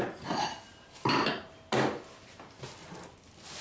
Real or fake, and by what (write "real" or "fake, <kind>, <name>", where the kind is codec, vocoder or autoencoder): real